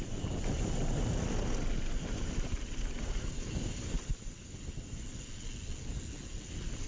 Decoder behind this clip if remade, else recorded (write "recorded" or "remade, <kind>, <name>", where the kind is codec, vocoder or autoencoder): recorded